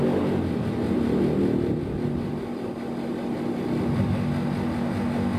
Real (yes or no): yes